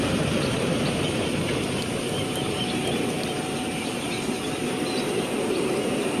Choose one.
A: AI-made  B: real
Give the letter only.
A